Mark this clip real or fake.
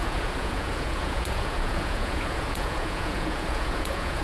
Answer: fake